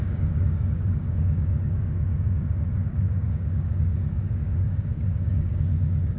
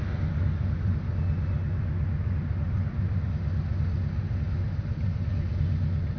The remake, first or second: first